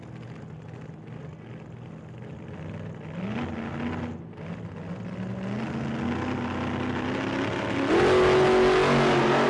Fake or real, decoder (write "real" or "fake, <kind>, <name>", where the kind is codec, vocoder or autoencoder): real